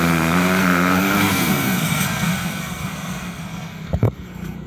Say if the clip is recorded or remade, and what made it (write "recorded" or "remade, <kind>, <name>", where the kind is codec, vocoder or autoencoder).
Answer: remade, codec, SNAC